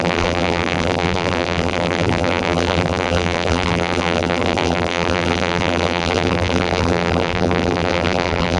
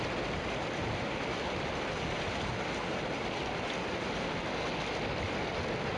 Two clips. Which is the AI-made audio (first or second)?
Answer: first